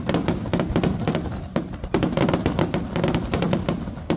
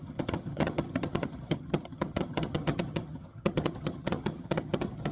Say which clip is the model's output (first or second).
second